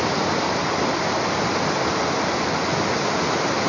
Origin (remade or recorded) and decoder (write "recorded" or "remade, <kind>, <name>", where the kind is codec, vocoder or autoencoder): recorded